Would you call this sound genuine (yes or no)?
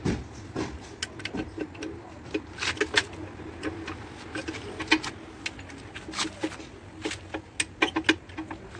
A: yes